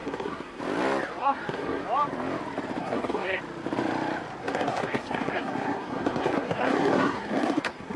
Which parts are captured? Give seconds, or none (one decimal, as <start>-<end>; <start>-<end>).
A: 0.6-1.2; 1.8-2.8; 3.4-4.4